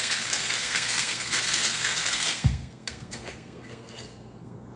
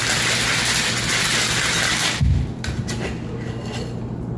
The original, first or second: second